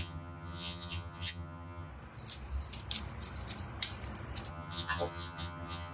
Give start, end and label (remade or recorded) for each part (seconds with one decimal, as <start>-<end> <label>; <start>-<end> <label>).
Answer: 0.0-1.9 remade; 1.9-4.5 recorded; 4.5-5.9 remade